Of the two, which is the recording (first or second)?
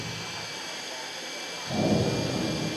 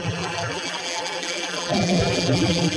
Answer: first